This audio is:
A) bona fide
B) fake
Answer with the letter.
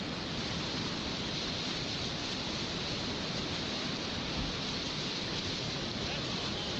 A